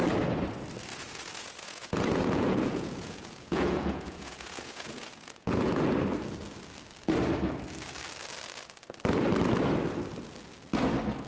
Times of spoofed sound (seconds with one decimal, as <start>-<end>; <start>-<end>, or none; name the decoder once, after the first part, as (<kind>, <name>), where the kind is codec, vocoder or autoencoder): 0.9-5.9 (vocoder, Vocos)